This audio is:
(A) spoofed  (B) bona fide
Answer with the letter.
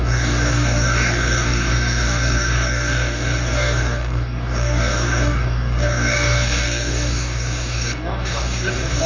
A